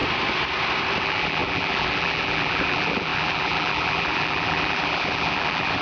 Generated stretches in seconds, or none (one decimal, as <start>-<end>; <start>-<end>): 1.0-5.8